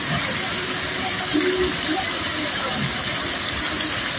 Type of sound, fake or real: real